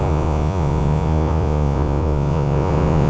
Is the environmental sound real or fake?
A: fake